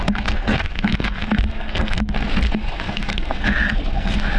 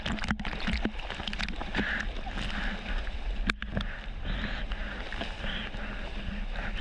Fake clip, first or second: first